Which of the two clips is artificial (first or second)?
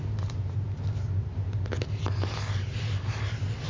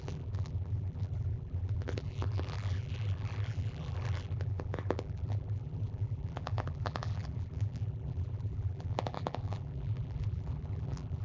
second